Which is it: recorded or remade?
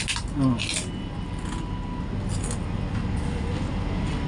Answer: recorded